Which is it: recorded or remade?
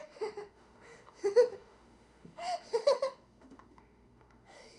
remade